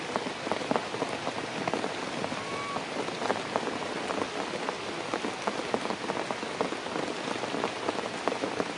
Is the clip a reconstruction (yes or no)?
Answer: no